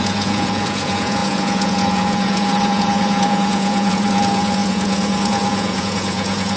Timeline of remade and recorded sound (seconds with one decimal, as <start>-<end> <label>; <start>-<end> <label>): 0.0-6.6 remade